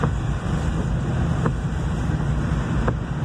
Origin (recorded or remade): recorded